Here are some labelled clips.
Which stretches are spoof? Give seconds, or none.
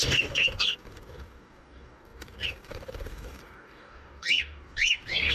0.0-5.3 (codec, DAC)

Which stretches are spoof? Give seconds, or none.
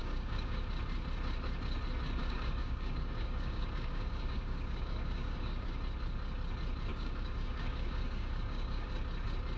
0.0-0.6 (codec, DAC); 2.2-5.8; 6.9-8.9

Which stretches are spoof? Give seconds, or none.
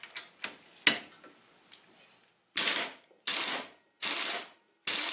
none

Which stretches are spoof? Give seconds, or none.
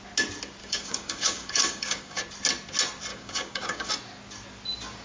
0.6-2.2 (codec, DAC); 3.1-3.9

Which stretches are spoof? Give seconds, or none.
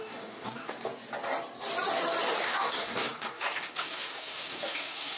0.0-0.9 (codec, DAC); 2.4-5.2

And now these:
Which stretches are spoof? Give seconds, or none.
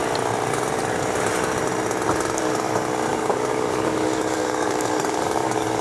3.1-5.8 (codec, DAC)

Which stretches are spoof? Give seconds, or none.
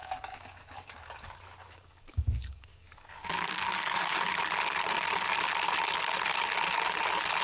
0.0-4.4 (codec, DAC)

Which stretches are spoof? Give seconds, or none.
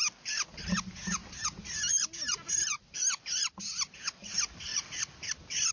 none